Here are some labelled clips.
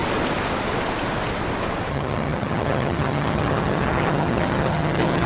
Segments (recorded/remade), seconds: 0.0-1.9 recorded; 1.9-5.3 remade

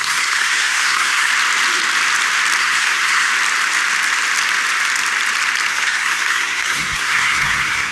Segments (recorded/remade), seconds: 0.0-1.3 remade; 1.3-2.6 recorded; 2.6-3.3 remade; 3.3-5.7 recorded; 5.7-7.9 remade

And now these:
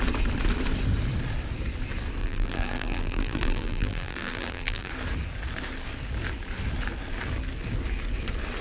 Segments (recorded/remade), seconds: 0.0-2.2 recorded; 2.2-4.9 remade; 4.9-8.6 recorded

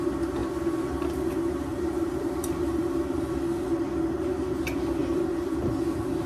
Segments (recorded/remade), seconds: 0.0-0.4 recorded; 0.4-0.9 remade; 0.9-1.7 recorded; 1.7-3.2 remade; 3.2-5.0 recorded; 5.0-5.7 remade; 5.7-6.3 recorded

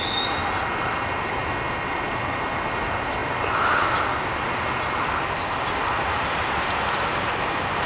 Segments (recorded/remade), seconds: 0.0-7.9 recorded